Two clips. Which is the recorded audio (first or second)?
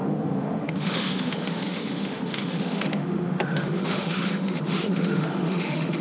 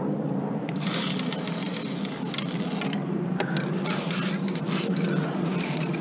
second